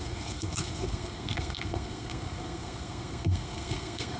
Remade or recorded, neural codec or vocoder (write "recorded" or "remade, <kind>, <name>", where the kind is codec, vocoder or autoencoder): remade, codec, SNAC